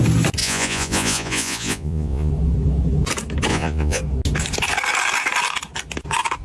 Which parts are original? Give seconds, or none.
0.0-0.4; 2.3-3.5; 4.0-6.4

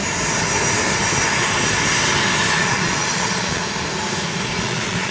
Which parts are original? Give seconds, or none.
0.0-2.5; 3.6-4.6

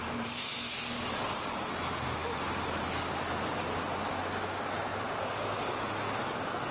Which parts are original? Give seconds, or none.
0.0-6.7